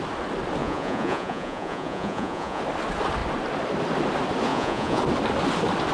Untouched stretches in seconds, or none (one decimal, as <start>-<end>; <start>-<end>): 0.0-0.6; 2.6-4.5; 5.0-5.9